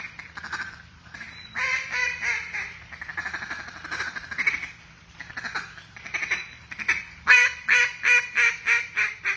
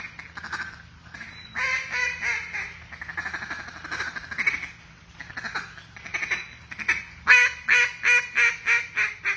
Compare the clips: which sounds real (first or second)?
second